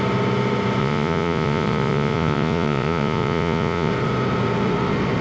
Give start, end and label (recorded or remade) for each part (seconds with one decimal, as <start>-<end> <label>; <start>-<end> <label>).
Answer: 0.0-0.8 recorded; 0.8-3.9 remade; 3.9-5.2 recorded